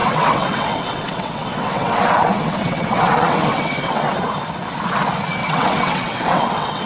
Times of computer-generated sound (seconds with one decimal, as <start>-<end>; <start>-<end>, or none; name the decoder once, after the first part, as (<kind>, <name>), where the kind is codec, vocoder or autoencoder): 0.0-4.1 (vocoder, WaveNeXt); 5.4-6.9